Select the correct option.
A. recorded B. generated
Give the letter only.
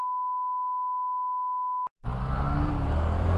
A